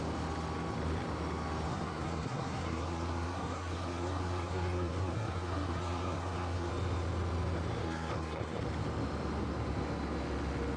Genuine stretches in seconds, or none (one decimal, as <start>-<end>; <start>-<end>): 0.0-1.7; 6.7-7.8; 8.6-10.8